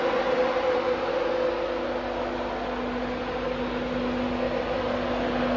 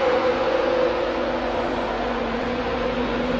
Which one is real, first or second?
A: first